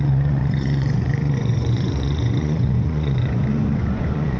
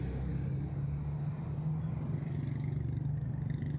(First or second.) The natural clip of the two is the second